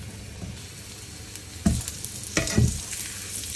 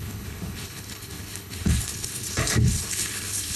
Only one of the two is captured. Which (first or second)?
first